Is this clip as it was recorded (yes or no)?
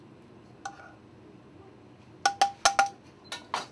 yes